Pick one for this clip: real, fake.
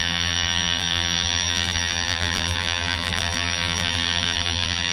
fake